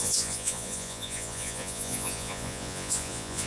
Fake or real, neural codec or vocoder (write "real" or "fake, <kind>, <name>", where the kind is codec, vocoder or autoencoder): fake, vocoder, Vocos